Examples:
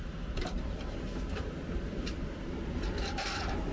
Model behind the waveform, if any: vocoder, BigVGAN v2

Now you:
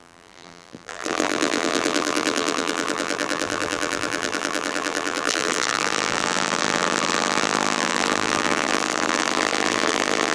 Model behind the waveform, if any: vocoder, BigVGAN v2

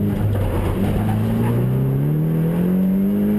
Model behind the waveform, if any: none